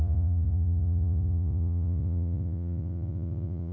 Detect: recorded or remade remade